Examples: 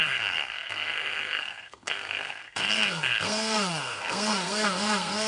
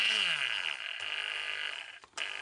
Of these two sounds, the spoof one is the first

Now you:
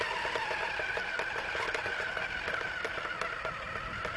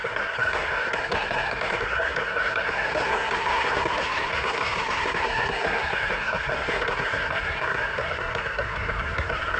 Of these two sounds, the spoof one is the second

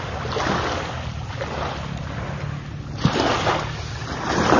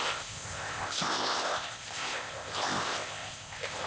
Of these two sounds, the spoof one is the second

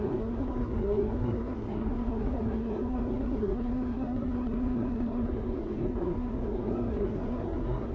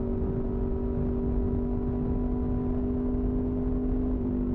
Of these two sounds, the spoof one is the first